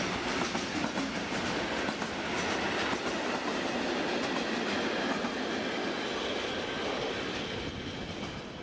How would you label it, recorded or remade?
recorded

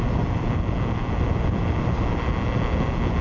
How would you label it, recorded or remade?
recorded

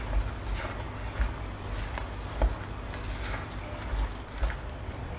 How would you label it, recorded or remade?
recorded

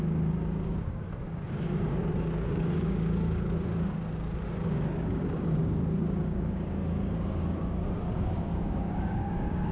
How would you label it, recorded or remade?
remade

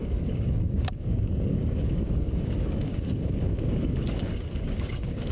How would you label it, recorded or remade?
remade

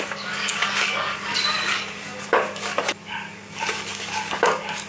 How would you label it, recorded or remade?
remade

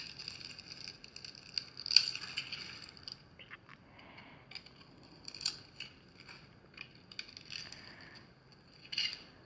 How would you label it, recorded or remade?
recorded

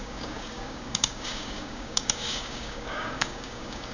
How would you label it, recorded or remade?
remade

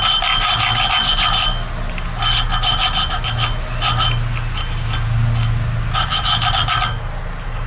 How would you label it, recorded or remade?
recorded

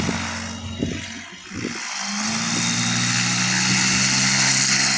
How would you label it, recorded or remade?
recorded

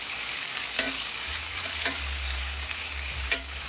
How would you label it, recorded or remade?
remade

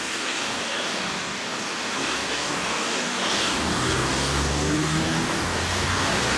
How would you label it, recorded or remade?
remade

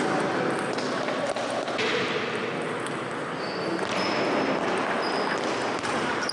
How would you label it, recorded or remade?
recorded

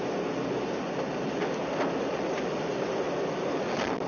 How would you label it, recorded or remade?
recorded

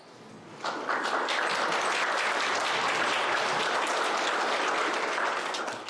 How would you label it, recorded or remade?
recorded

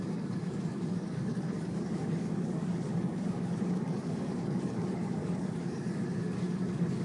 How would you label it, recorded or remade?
remade